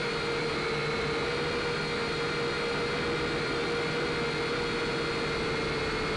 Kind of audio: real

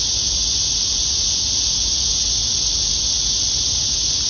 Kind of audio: real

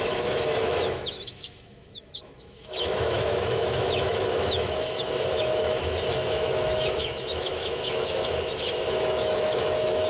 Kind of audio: fake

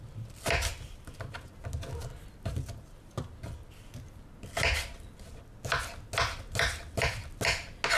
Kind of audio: real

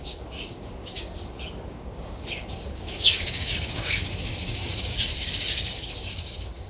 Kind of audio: fake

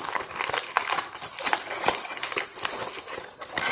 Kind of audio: real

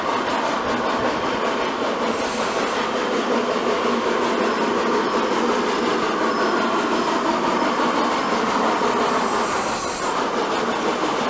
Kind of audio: real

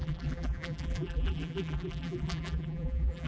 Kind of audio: fake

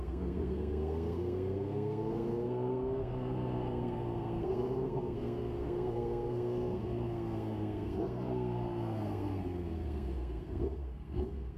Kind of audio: fake